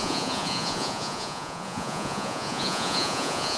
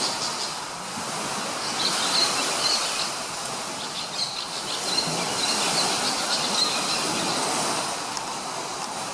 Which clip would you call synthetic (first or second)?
first